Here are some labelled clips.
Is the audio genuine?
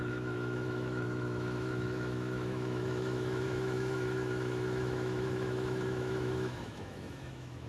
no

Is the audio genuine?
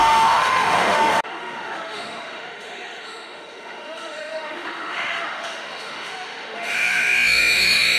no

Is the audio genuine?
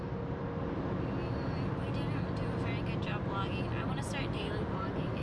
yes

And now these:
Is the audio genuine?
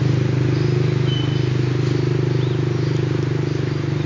yes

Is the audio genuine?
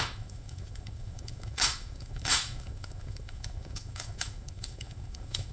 no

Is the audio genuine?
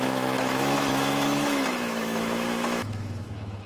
no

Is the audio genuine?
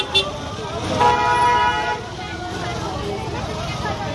yes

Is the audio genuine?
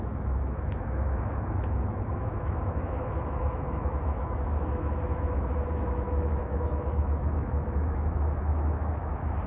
no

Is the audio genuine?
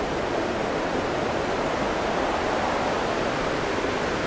yes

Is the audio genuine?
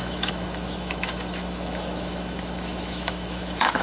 no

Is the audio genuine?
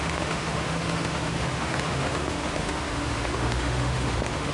no